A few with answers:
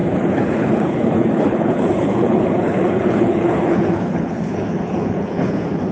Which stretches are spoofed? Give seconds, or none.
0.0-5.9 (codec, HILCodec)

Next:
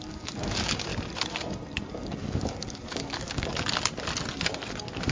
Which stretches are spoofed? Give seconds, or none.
0.0-0.9 (codec, DAC); 1.9-3.5